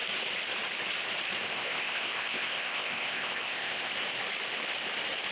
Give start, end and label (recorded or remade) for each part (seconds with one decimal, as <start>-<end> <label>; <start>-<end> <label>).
0.0-1.4 recorded; 1.4-3.9 remade; 3.9-5.3 recorded